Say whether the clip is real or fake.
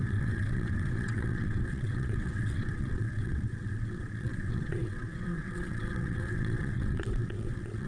fake